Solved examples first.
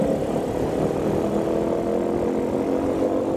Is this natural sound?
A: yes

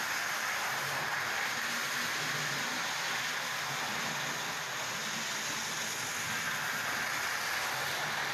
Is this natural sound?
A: yes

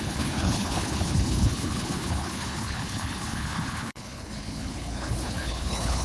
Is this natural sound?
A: no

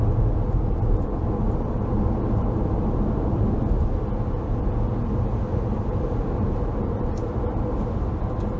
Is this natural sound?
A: yes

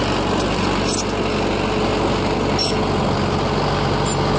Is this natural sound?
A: yes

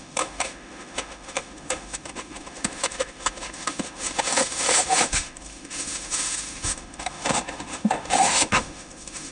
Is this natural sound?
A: no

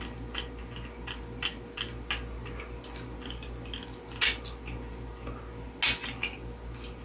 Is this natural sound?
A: yes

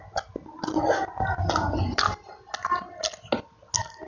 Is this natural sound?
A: yes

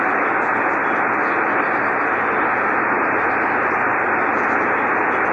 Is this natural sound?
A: yes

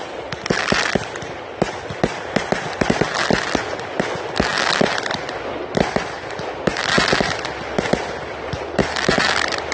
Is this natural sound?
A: yes